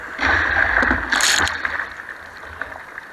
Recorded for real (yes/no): yes